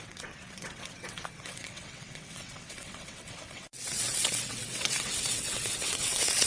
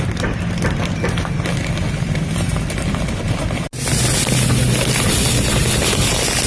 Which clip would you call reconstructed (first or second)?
first